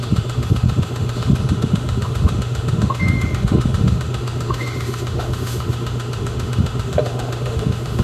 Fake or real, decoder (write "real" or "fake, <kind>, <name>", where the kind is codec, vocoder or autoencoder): fake, autoencoder, DAC-VAE